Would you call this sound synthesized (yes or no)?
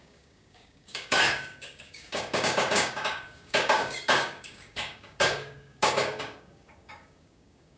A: yes